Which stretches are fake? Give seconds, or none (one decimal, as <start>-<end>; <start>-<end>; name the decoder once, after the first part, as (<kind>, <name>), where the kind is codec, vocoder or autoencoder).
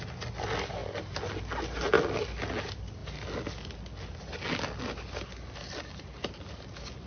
none